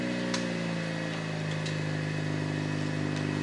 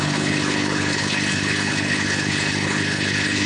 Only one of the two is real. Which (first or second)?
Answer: first